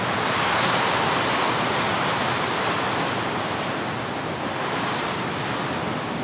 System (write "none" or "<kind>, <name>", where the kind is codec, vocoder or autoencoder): none